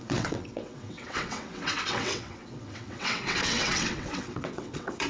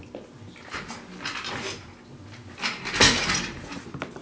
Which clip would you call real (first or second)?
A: second